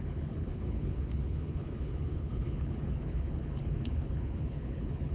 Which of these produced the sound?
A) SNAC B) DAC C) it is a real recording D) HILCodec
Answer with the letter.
D